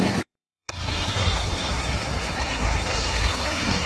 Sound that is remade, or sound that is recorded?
remade